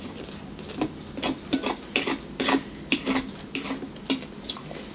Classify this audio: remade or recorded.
remade